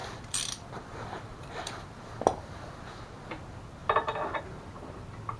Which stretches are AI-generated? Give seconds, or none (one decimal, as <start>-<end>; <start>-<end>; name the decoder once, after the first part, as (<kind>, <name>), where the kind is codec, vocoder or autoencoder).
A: 0.0-3.0 (vocoder, BigVGAN v2)